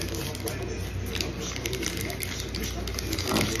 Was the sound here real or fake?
real